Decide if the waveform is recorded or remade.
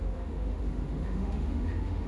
remade